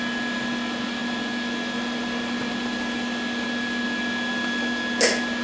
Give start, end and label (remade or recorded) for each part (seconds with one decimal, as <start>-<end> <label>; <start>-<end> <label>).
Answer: 0.0-5.4 recorded